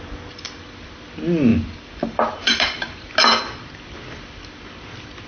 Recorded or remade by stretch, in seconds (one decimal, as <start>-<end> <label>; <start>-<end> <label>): 0.0-1.5 recorded; 1.5-3.1 remade; 3.1-5.3 recorded